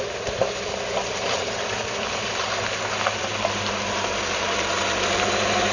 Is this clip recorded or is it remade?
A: recorded